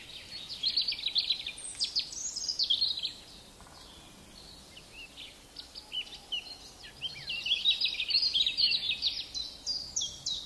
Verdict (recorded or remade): recorded